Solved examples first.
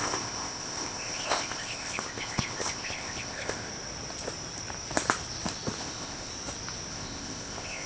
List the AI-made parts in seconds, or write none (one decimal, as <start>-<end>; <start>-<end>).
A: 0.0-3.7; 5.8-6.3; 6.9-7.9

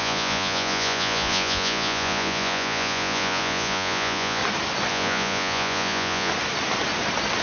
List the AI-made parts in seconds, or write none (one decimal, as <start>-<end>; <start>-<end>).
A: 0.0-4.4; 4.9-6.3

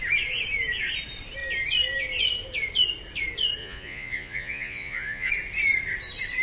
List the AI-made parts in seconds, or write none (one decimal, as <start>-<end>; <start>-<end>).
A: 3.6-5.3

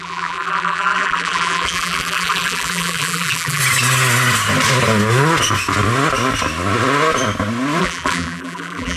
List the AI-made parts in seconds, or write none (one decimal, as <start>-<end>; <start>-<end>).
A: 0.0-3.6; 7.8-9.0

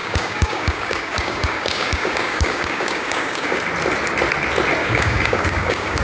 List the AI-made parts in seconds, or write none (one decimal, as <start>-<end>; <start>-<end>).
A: 0.0-3.6; 4.8-6.0

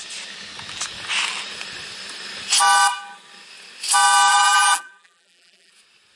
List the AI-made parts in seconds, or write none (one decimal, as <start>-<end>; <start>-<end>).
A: 4.3-5.7